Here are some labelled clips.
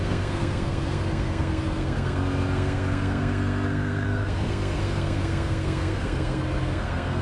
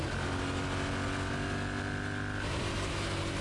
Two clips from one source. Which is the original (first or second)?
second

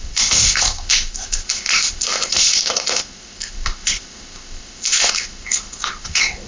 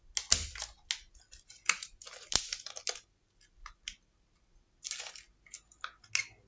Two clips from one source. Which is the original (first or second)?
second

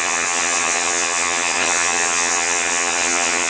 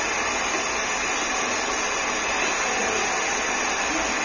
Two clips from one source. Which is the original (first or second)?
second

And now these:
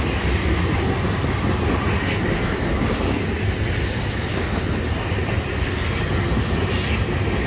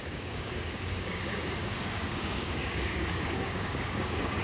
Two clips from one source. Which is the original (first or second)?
first